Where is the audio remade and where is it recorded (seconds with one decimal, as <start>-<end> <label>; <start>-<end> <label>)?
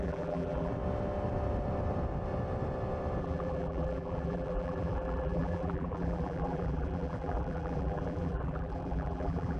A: 0.0-0.7 remade; 0.7-3.2 recorded; 3.2-9.6 remade